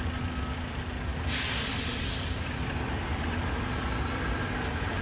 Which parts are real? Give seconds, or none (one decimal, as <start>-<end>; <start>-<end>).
0.0-5.0